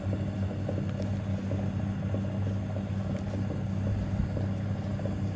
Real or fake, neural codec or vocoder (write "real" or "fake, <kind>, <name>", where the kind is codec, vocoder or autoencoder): real